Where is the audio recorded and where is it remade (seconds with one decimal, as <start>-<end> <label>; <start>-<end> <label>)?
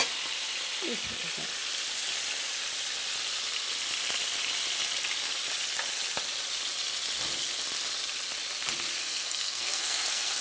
0.0-9.0 recorded; 9.0-10.4 remade